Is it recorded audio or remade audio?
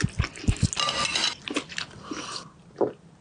recorded